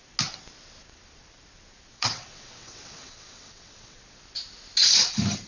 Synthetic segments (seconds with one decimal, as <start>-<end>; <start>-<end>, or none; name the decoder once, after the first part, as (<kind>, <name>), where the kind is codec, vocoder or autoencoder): 1.9-4.0 (vocoder, WaveNeXt)